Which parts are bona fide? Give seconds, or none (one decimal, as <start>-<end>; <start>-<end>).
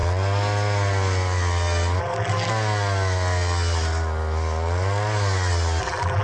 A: 0.0-2.0; 2.5-5.8